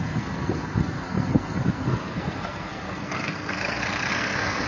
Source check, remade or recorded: remade